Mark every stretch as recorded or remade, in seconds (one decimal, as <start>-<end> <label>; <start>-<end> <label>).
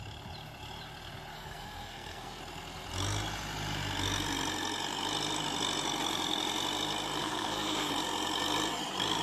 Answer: 0.0-1.3 recorded; 1.3-2.4 remade; 2.4-7.2 recorded; 7.2-7.9 remade; 7.9-9.2 recorded